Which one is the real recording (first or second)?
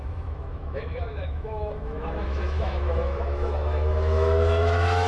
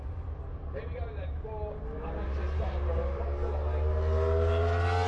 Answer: second